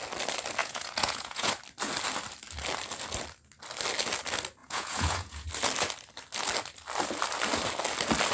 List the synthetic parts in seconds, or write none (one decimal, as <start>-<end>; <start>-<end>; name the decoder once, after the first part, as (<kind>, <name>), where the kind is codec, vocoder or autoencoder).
0.6-1.5 (vocoder, Vocos); 4.6-5.5